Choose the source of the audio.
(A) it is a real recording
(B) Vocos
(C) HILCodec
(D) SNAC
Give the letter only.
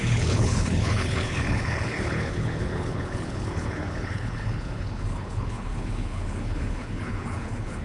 C